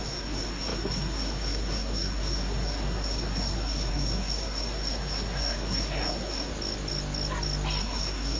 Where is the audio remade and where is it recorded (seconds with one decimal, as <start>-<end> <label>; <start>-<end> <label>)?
0.0-6.5 remade; 6.5-7.8 recorded; 7.8-8.4 remade

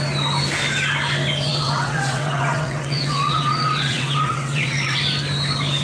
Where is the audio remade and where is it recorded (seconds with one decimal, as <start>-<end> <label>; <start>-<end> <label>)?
0.0-1.5 recorded; 1.5-5.0 remade; 5.0-5.8 recorded

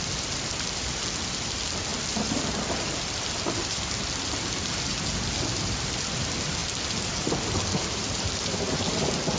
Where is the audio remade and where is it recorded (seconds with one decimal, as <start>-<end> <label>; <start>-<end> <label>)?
0.0-9.4 recorded

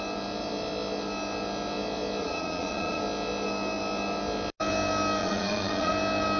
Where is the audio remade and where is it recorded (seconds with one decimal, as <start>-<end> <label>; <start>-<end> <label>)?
0.0-2.2 recorded; 2.2-3.0 remade; 3.0-5.2 recorded; 5.2-5.9 remade; 5.9-6.4 recorded